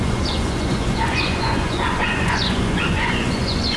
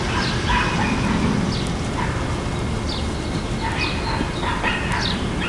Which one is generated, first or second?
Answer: first